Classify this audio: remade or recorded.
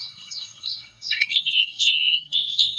remade